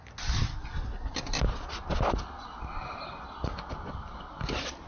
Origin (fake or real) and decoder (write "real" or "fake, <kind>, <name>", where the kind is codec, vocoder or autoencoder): real